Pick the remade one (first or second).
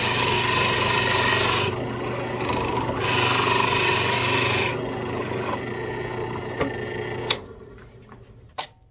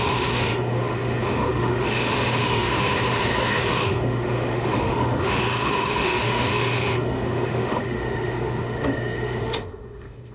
second